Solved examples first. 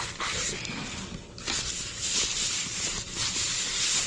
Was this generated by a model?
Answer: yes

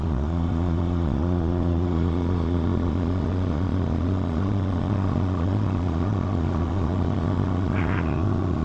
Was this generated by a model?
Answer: yes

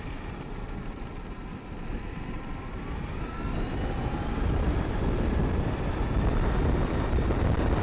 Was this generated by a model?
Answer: no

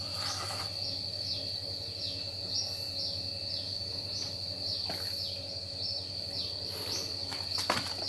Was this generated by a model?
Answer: no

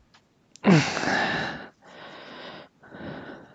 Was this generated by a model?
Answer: no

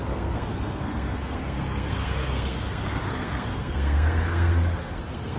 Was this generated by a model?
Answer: yes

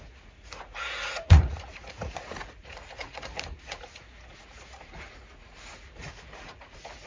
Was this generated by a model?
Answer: yes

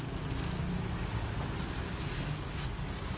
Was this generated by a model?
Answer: no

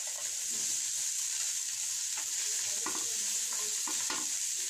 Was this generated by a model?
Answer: no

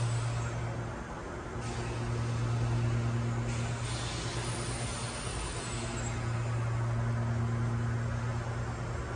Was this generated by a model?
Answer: no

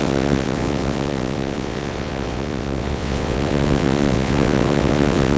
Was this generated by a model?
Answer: yes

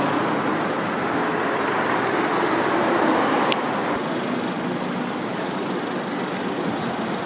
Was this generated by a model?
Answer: no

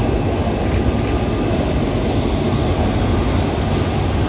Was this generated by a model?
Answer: no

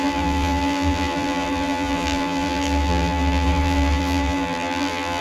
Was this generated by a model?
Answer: yes